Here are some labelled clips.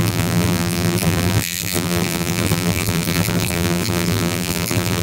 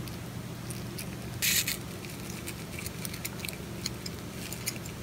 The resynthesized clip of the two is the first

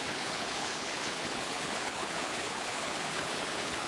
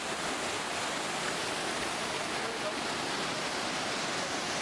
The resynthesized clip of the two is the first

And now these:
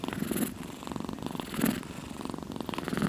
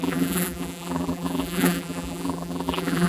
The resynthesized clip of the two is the second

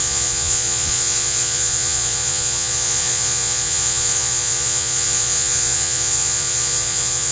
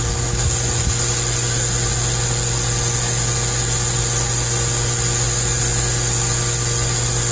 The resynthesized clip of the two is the first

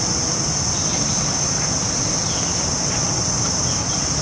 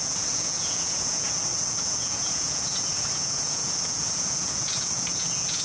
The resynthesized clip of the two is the second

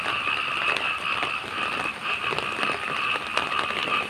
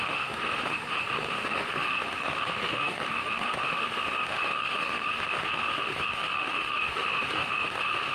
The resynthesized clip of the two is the second